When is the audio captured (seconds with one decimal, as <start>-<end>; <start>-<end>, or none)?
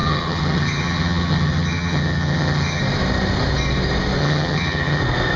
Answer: 2.8-4.2; 5.0-5.4